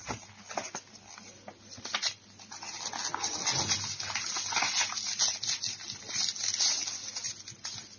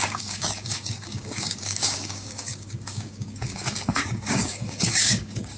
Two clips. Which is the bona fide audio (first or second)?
first